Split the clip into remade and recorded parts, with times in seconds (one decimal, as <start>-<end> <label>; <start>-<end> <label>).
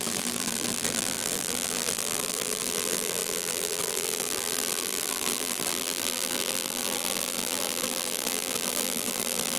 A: 0.0-9.6 remade